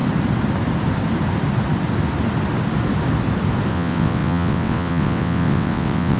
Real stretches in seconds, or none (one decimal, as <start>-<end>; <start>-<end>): 0.0-3.7